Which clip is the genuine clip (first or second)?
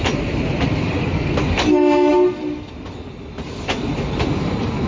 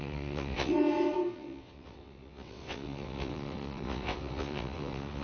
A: first